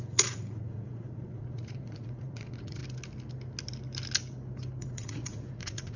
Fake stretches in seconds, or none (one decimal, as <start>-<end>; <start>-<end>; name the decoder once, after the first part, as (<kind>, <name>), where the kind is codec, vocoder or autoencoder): 0.0-2.8 (vocoder, Vocos); 4.8-6.0